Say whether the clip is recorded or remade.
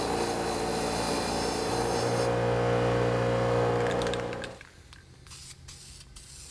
recorded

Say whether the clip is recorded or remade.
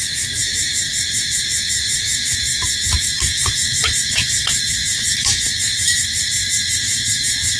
remade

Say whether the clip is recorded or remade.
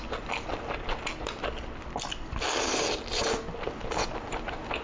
recorded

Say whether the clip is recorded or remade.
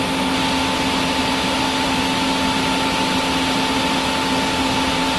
recorded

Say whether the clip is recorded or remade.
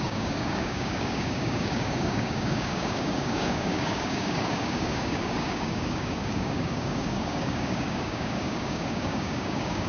remade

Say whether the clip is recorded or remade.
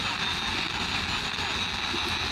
recorded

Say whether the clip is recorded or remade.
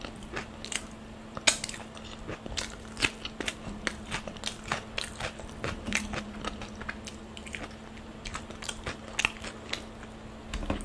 recorded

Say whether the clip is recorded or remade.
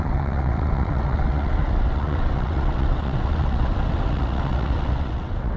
remade